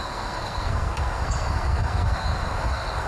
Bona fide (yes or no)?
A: no